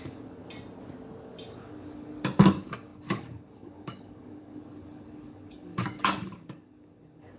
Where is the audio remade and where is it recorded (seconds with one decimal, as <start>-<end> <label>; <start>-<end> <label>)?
0.0-0.4 remade; 0.4-1.6 recorded; 1.6-7.4 remade